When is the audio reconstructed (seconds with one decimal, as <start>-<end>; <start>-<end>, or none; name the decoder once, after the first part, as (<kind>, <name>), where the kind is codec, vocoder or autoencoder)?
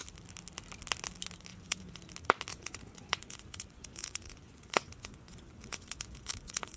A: 1.5-2.0 (vocoder, Vocos); 2.5-6.8